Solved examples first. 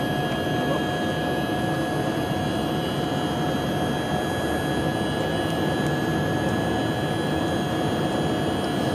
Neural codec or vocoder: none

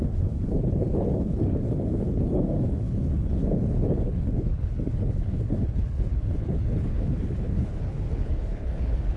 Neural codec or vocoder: codec, HILCodec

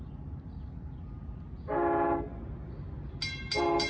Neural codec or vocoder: none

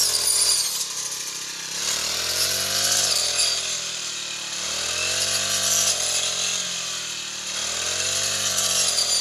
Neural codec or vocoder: none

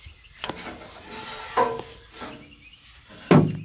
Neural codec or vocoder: none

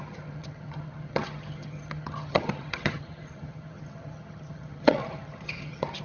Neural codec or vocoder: vocoder, HiFi-GAN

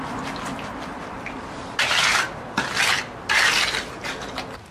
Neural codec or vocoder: none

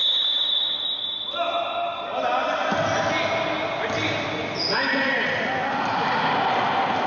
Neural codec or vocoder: none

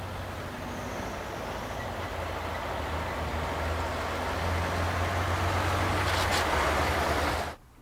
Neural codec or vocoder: none